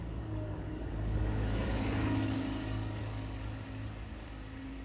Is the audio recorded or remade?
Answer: remade